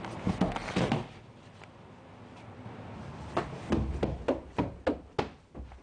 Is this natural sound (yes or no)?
yes